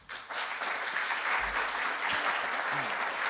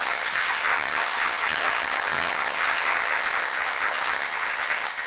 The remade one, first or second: second